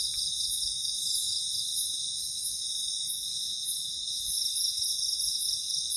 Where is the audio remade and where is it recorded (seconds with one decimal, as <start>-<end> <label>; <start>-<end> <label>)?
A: 0.0-6.0 recorded